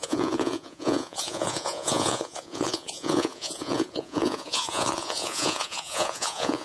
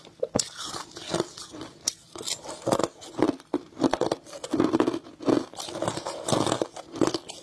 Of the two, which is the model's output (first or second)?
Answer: first